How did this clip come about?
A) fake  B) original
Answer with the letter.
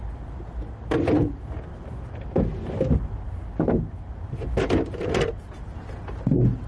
B